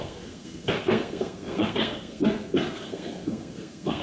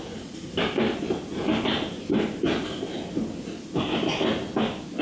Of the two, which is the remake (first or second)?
first